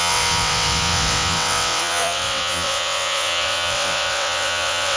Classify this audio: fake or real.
fake